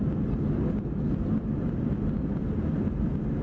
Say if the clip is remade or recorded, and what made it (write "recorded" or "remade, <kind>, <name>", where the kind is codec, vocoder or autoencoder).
recorded